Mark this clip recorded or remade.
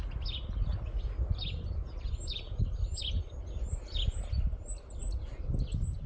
recorded